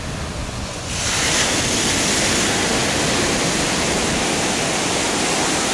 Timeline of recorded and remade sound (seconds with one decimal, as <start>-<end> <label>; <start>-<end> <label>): 0.0-0.4 recorded; 0.4-0.9 remade; 0.9-5.7 recorded